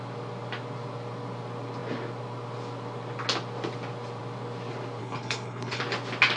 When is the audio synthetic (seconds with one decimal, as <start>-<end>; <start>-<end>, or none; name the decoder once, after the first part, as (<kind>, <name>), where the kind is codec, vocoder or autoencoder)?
5.0-5.8 (codec, HILCodec)